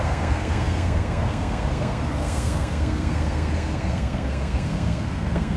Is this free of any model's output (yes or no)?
no